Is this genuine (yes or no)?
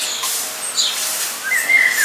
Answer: no